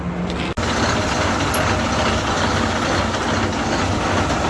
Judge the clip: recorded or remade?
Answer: recorded